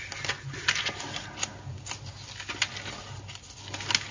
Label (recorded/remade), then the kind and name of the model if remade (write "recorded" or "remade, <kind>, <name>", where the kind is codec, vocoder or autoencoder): recorded